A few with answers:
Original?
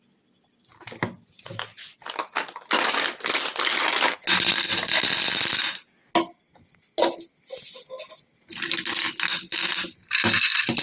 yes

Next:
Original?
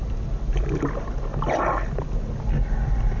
yes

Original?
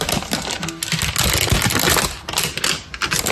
yes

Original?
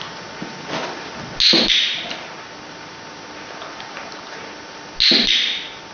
yes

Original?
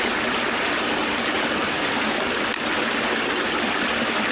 yes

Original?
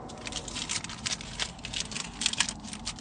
yes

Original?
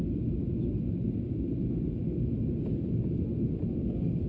yes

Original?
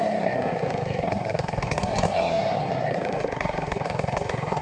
no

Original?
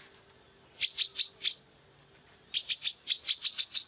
yes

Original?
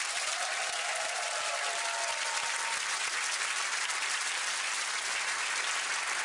yes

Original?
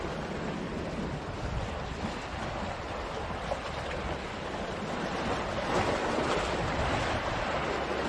yes